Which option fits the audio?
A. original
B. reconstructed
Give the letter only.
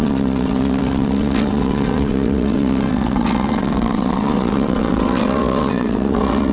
B